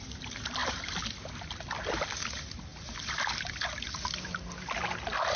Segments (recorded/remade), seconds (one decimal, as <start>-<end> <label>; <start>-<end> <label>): 0.0-5.4 recorded